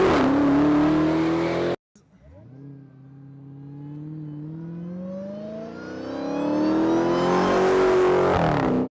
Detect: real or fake real